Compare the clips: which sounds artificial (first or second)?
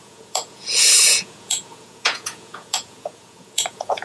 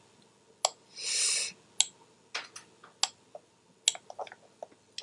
first